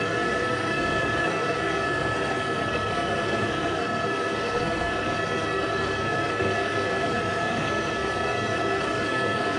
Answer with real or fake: fake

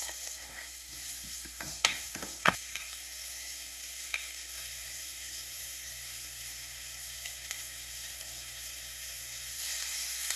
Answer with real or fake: fake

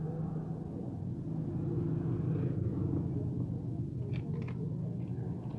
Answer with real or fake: real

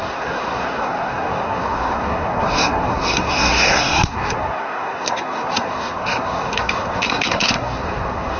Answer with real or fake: fake